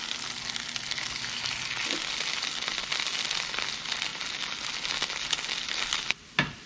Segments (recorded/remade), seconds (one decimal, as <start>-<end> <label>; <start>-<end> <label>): 0.0-6.7 recorded